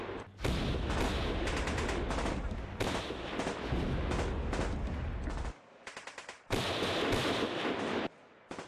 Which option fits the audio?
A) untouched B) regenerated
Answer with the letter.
A